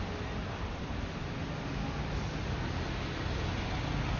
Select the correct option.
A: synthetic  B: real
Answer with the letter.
B